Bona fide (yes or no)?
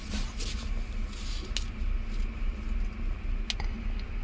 yes